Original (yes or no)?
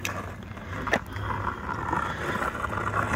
yes